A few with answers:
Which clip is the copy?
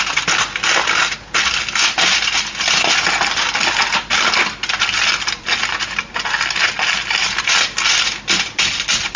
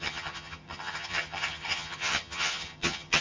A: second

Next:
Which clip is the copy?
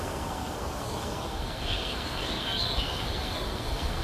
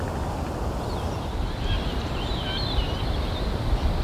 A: first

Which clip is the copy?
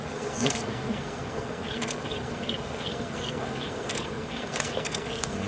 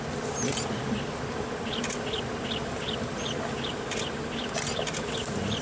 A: first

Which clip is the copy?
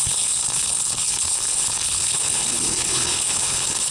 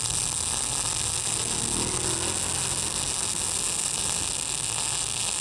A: first